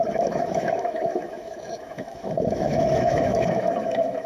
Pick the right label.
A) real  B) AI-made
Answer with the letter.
B